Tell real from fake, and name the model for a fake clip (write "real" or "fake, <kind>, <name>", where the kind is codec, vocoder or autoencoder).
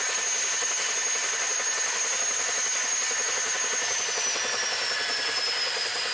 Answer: real